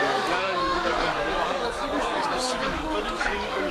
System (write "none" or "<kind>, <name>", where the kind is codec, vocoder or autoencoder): codec, DAC